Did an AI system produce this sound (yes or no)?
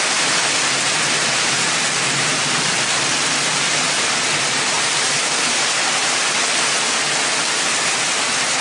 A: no